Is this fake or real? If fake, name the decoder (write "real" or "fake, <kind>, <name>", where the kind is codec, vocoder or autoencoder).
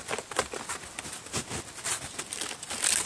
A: real